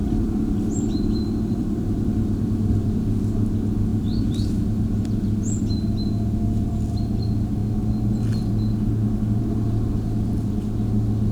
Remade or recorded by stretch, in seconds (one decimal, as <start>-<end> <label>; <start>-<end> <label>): 0.0-3.0 remade; 3.0-3.9 recorded; 3.9-4.5 remade; 4.5-11.3 recorded